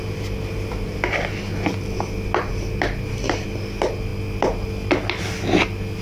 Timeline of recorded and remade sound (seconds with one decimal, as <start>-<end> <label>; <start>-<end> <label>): 0.0-6.0 recorded